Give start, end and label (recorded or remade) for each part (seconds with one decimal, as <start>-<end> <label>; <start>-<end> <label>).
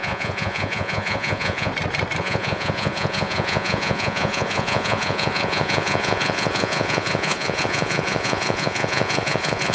0.0-1.7 remade; 1.7-2.2 recorded; 2.2-9.7 remade